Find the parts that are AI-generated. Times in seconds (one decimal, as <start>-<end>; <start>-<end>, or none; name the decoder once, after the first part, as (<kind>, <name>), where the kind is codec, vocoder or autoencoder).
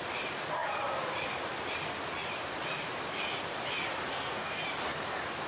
4.1-4.6 (codec, SNAC)